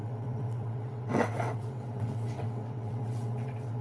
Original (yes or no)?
no